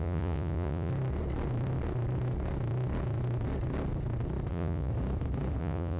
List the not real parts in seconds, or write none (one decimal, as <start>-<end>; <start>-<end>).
0.0-0.9; 4.5-4.9; 5.6-6.0